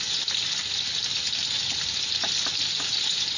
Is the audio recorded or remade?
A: recorded